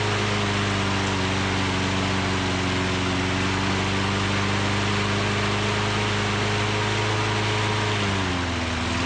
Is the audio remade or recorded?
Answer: recorded